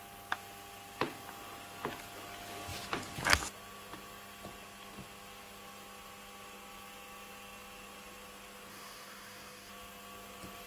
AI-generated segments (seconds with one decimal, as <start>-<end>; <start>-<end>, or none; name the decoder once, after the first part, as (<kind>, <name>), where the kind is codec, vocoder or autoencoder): 8.7-9.7 (codec, DAC)